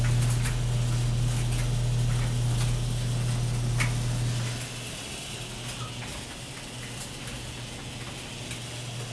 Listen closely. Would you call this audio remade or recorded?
recorded